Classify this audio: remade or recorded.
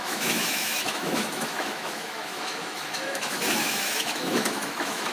remade